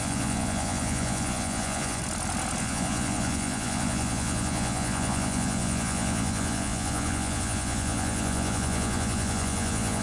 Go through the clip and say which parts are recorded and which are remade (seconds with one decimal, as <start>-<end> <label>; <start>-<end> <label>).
0.0-2.0 remade; 2.0-2.6 recorded; 2.6-10.0 remade

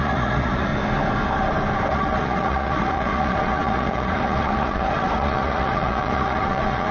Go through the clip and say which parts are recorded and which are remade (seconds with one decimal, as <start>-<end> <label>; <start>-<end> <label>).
0.0-0.7 remade; 0.7-1.9 recorded; 1.9-6.9 remade